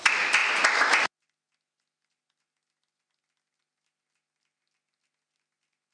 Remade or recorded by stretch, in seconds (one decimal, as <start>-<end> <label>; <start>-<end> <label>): 0.0-5.9 recorded